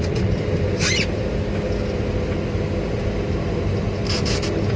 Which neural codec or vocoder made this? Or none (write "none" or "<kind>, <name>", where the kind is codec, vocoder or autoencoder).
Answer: none